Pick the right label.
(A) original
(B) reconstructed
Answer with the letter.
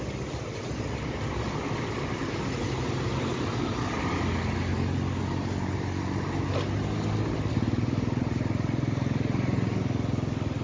A